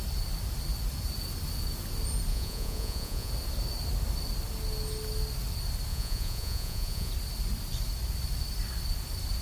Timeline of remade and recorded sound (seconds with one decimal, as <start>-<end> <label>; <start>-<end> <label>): 0.0-2.3 recorded; 2.3-3.3 remade; 3.3-5.9 recorded; 5.9-7.1 remade; 7.1-9.4 recorded

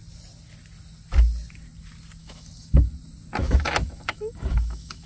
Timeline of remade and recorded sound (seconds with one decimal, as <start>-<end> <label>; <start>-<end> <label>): 0.0-2.2 recorded; 2.2-2.9 remade; 2.9-3.4 recorded; 3.4-5.1 remade